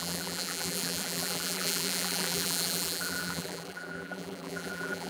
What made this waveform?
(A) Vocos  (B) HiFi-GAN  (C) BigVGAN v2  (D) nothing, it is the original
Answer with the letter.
C